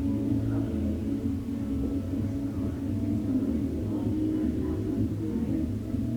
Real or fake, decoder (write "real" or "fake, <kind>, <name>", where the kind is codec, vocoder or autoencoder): real